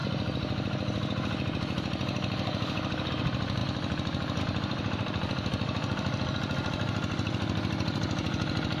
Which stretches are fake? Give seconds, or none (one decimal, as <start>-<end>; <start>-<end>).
3.1-3.6; 4.4-8.8